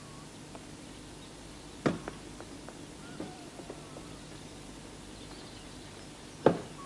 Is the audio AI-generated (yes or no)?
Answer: no